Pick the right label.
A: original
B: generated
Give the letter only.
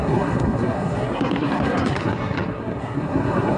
B